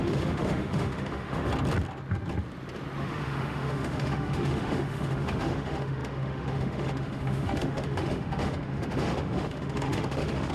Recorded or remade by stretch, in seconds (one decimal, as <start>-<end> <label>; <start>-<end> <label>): 0.0-1.5 remade; 1.5-3.0 recorded; 3.0-10.5 remade